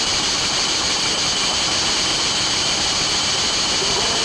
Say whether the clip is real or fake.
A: fake